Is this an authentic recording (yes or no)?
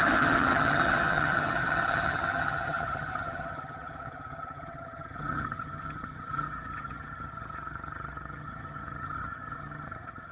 no